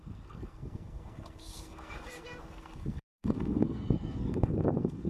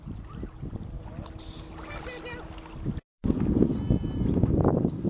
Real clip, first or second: second